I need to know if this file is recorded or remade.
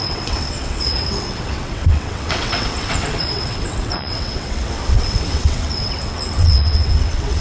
remade